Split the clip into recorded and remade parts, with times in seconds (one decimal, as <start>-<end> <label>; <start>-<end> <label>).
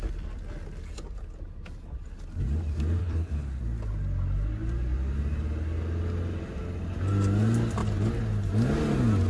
0.0-3.0 recorded; 3.0-3.6 remade; 3.6-9.3 recorded